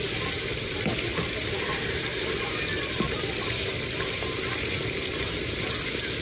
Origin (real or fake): fake